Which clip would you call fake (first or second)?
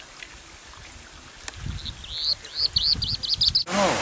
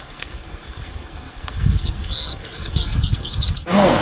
second